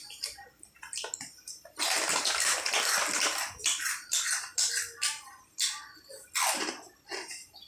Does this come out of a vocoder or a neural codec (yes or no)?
no